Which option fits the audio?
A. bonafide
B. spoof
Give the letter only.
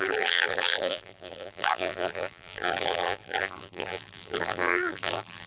B